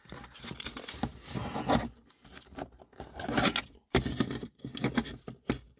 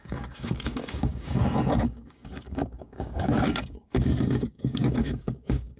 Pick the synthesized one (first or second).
second